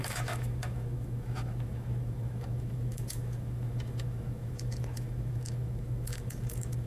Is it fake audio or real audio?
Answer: fake